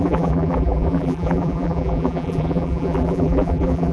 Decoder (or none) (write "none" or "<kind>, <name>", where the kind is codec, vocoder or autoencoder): vocoder, BigVGAN v2